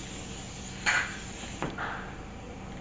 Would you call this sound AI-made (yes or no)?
no